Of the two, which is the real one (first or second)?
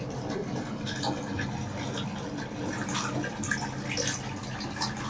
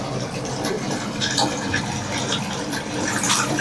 first